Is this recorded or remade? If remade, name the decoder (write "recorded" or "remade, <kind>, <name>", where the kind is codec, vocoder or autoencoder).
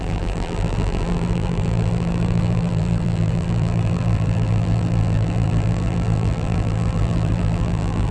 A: remade, vocoder, BigVGAN v2